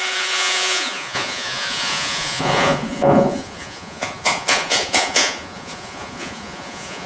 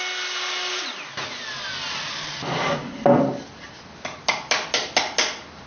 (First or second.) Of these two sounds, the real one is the second